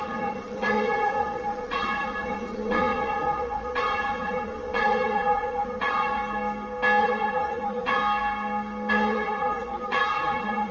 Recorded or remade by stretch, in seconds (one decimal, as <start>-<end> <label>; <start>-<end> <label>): 0.0-6.2 remade; 6.2-7.0 recorded; 7.0-8.0 remade; 8.0-8.9 recorded; 8.9-10.7 remade